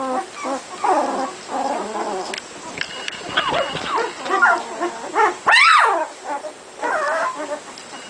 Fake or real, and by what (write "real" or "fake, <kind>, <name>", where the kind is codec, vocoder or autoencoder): real